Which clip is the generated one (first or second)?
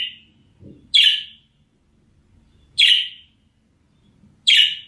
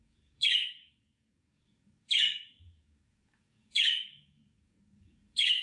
second